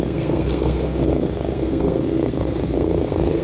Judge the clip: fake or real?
fake